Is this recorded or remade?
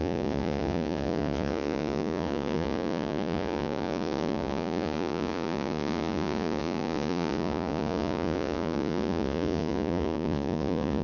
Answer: remade